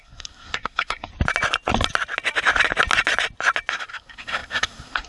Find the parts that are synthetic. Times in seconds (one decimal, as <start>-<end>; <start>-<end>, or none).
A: 0.0-1.1; 3.7-5.1